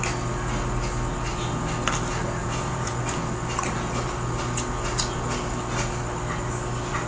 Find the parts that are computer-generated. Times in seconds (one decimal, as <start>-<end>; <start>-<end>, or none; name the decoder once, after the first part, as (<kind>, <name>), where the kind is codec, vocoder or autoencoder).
2.4-3.0 (vocoder, Vocos)